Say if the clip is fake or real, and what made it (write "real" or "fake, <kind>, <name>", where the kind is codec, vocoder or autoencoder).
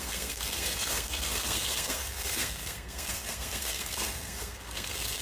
fake, codec, SNAC